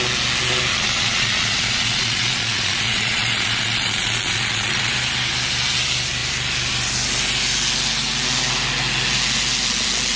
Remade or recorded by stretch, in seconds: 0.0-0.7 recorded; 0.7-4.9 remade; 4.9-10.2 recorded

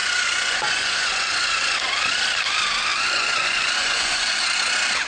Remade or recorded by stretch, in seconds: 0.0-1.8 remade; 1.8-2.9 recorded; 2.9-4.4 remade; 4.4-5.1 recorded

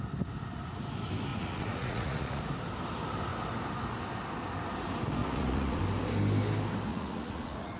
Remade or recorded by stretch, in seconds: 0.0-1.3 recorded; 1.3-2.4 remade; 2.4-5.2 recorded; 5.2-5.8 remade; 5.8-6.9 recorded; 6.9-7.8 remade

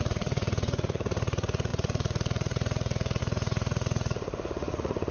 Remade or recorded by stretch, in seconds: 0.0-5.1 remade

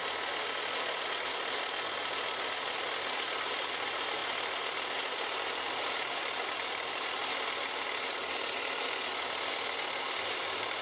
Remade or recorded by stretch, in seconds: 0.0-10.8 recorded

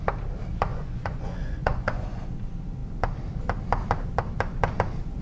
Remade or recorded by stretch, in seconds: 0.0-0.7 recorded; 0.7-2.2 remade; 2.2-5.2 recorded